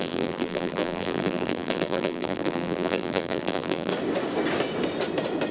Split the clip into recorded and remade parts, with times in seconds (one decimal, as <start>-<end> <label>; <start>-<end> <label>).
0.0-3.9 remade; 3.9-5.5 recorded